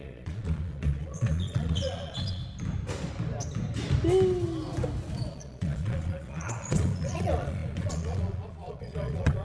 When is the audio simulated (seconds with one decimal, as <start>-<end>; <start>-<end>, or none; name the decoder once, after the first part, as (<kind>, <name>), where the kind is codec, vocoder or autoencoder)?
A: 0.0-2.4 (vocoder, Vocos); 5.3-9.4